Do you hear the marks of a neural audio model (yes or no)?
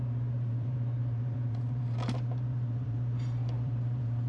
yes